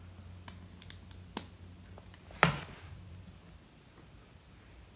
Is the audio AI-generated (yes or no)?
no